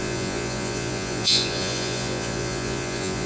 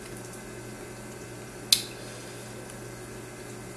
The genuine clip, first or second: second